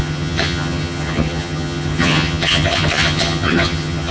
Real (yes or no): no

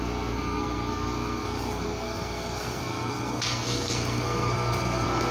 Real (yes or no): no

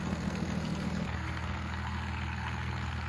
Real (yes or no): no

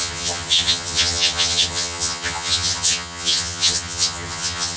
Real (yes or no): no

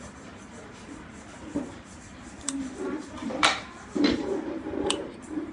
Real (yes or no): no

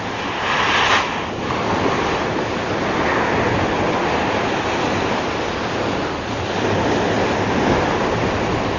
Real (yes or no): yes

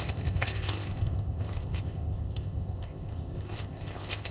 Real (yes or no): no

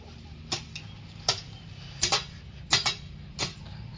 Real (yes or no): yes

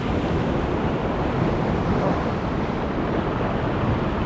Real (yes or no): yes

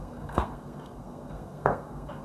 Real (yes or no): no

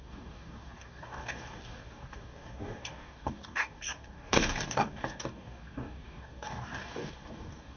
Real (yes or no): no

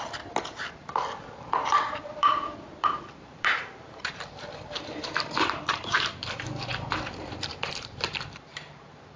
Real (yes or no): no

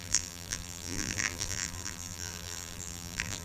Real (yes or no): no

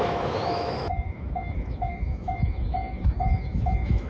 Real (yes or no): no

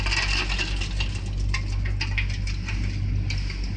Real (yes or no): yes